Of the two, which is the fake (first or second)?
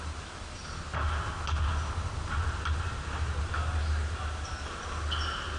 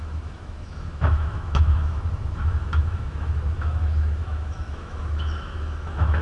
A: second